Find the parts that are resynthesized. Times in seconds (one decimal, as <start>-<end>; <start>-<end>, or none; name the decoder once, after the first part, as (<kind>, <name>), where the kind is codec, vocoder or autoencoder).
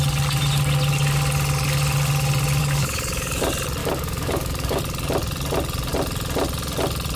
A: 2.6-3.4 (codec, DAC); 3.8-4.8